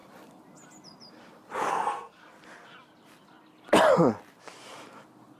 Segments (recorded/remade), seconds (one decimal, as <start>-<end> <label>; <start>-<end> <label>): 0.0-1.7 recorded; 1.7-2.2 remade; 2.2-5.4 recorded